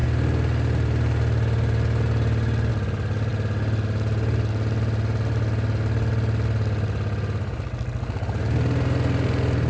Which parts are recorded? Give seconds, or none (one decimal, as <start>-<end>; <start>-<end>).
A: 0.0-9.7